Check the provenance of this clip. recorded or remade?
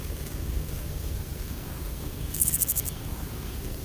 remade